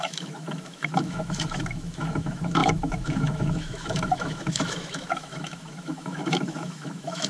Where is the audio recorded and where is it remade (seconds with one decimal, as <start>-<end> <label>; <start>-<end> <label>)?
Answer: 0.0-7.3 remade